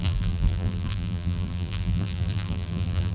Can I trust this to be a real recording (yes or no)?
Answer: no